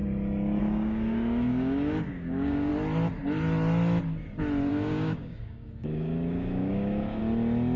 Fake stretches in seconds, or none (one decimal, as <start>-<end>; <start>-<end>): 0.6-2.7; 4.7-7.2